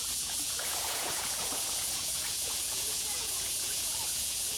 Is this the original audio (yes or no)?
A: no